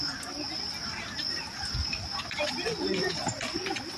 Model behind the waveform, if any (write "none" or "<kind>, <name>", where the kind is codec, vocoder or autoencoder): none